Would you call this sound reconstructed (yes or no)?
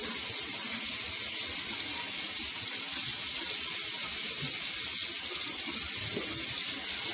no